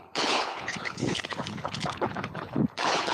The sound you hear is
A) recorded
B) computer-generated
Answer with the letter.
B